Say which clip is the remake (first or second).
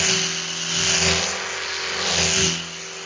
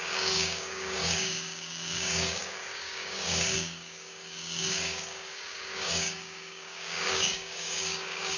second